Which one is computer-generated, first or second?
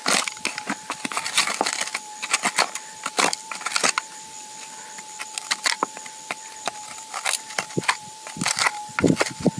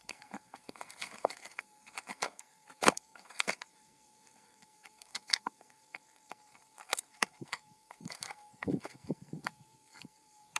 second